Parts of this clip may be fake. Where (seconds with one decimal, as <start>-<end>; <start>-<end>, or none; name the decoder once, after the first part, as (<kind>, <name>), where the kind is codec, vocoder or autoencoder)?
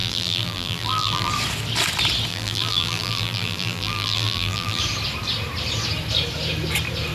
0.0-1.3 (vocoder, BigVGAN v2); 2.3-4.8